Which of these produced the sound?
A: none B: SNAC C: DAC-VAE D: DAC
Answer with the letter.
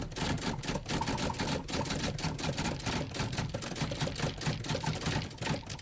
A